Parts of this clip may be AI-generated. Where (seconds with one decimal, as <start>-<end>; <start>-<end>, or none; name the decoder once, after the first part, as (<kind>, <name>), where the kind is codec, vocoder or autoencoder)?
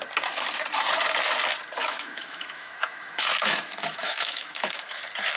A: 1.8-5.0 (autoencoder, DAC-VAE)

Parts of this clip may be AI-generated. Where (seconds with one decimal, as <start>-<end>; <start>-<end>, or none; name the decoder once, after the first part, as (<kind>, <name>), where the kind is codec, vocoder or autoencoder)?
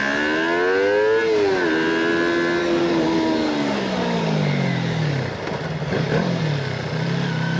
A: 2.6-5.3 (codec, DAC); 5.8-6.4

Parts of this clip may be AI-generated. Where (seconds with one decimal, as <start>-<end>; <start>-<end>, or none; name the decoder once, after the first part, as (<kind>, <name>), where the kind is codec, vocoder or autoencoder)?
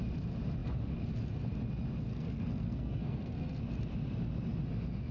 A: 2.1-3.6 (codec, SNAC)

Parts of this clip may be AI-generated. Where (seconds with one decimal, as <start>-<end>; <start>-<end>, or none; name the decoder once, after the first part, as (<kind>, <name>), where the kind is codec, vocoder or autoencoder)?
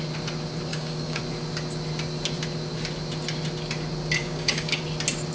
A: 0.7-1.2 (codec, DAC); 4.2-4.8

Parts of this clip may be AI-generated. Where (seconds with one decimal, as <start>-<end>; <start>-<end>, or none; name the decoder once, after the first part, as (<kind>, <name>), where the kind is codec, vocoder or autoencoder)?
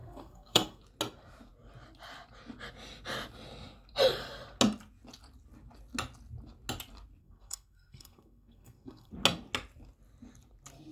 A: 0.0-0.8 (codec, SNAC); 7.2-9.1